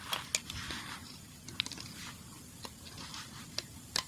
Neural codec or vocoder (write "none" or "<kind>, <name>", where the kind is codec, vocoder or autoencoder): none